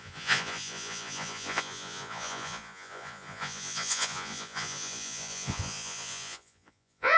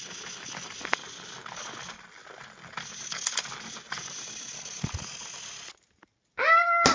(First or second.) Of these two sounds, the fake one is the first